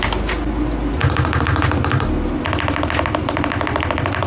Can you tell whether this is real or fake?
real